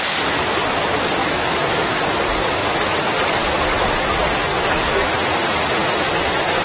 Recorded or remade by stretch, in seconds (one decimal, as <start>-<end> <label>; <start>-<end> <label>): 0.0-1.2 recorded; 1.2-1.9 remade; 1.9-6.6 recorded